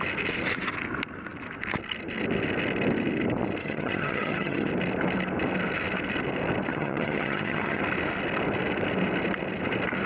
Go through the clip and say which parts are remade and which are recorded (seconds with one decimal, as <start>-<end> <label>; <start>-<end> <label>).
0.0-3.6 recorded; 3.6-4.7 remade; 4.7-6.7 recorded; 6.7-7.8 remade; 7.8-10.1 recorded